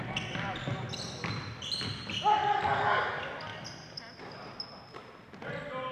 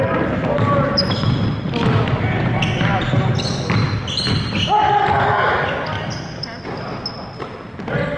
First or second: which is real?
first